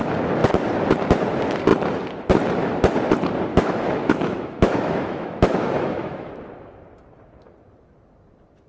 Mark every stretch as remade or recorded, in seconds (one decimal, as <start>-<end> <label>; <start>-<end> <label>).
0.0-3.5 recorded; 3.5-6.3 remade; 6.3-8.7 recorded